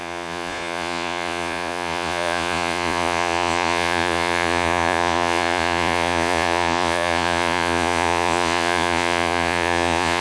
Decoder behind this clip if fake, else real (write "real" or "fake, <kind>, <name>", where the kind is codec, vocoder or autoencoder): fake, vocoder, Vocos